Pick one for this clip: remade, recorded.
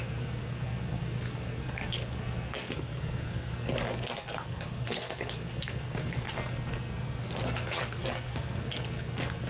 remade